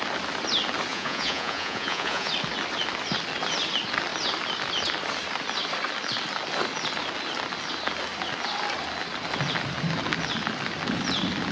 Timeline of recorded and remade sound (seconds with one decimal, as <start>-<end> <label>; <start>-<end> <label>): 0.0-0.9 recorded; 0.9-2.3 remade; 2.3-11.5 recorded